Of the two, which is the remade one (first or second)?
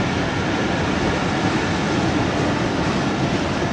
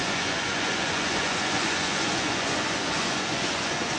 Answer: second